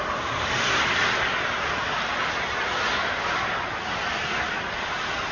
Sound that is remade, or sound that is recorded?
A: recorded